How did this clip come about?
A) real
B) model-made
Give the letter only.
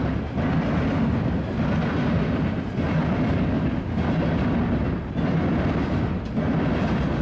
A